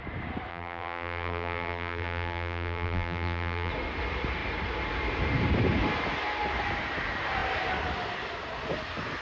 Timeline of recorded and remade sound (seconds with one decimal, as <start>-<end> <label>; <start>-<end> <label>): 0.0-0.5 recorded; 0.5-3.7 remade; 3.7-9.2 recorded